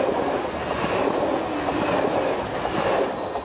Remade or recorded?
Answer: recorded